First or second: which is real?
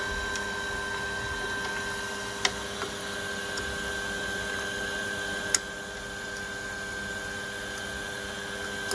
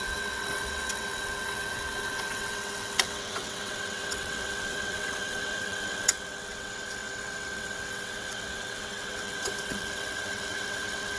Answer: first